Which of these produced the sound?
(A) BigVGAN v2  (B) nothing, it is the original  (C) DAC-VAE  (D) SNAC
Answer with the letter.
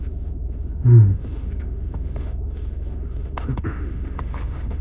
C